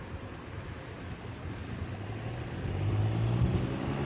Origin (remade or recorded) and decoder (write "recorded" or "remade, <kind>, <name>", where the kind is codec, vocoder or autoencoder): recorded